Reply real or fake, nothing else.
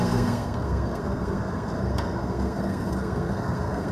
fake